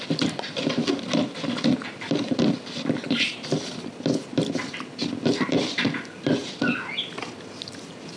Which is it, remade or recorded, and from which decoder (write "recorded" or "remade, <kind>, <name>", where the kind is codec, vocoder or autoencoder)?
recorded